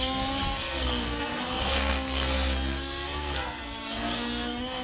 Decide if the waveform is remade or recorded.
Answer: remade